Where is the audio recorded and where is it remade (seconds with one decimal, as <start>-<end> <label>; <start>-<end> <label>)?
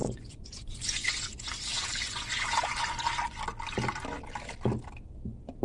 0.0-3.4 remade; 3.4-5.6 recorded